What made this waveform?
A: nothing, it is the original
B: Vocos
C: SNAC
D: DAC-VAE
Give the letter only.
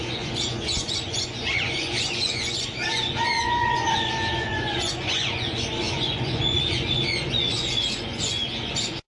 B